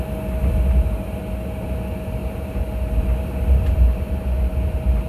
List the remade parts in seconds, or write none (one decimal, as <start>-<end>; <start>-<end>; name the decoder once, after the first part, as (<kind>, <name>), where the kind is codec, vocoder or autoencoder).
0.4-1.2 (vocoder, BigVGAN v2); 2.2-4.5